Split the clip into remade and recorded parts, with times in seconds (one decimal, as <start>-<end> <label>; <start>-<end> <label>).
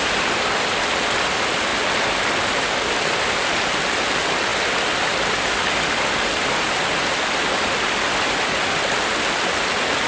0.0-10.1 recorded